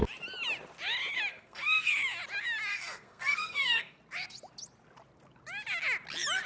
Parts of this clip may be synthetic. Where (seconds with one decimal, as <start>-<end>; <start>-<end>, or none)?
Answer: 1.3-1.9; 2.7-4.0